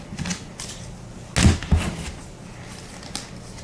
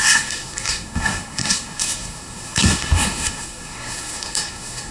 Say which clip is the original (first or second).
first